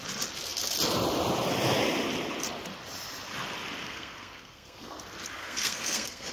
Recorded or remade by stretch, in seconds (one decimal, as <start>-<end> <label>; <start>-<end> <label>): 0.0-3.8 recorded; 3.8-5.0 remade; 5.0-5.4 recorded; 5.4-6.3 remade